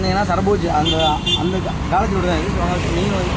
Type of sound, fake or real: real